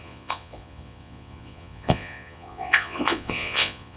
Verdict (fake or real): fake